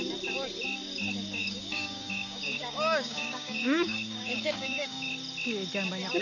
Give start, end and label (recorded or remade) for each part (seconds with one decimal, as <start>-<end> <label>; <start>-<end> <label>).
0.0-1.4 recorded; 1.4-5.1 remade; 5.1-6.2 recorded